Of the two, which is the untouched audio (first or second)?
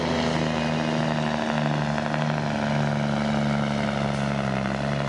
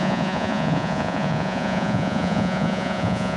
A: first